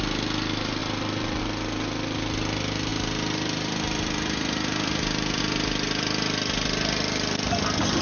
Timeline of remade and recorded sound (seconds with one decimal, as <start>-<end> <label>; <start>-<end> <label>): 0.0-0.8 recorded; 0.8-1.4 remade; 1.4-2.9 recorded; 2.9-5.4 remade; 5.4-8.0 recorded